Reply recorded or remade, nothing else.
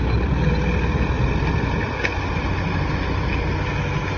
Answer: recorded